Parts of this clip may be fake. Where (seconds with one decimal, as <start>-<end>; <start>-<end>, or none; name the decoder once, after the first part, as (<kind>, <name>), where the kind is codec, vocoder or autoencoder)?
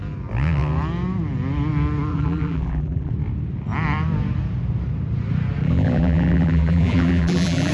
2.1-3.1 (vocoder, BigVGAN v2); 5.6-7.7